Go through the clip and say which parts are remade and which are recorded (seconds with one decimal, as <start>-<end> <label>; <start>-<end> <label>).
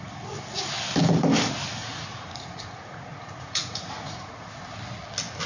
0.0-1.8 recorded; 1.8-4.5 remade; 4.5-5.5 recorded